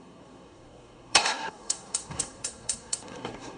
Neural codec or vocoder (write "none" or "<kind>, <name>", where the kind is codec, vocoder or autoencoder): codec, SNAC